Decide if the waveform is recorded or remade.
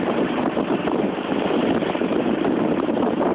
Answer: recorded